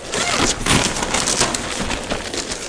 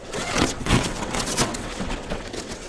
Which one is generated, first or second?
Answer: second